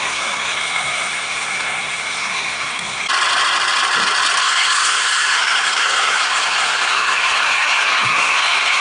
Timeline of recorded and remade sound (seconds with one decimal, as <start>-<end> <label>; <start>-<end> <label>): 0.0-3.0 remade; 3.0-4.4 recorded; 4.4-8.8 remade